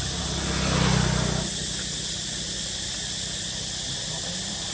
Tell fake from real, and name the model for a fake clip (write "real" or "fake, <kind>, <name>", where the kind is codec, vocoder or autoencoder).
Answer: real